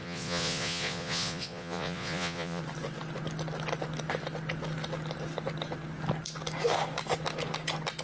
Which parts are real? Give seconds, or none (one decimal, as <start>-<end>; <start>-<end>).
2.6-8.0